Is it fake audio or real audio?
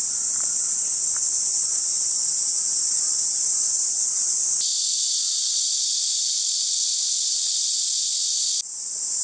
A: real